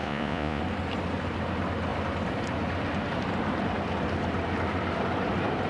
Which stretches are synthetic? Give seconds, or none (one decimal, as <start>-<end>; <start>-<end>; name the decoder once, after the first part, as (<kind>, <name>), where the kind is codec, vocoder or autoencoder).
0.0-0.6 (vocoder, Vocos)